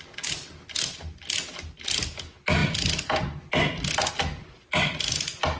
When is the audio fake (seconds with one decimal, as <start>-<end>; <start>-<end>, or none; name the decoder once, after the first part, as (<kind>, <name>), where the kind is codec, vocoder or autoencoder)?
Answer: none